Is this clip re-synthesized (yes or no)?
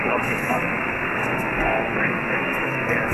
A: yes